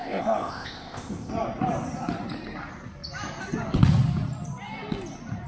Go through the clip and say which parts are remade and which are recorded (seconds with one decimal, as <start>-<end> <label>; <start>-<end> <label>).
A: 0.0-1.3 remade; 1.3-5.5 recorded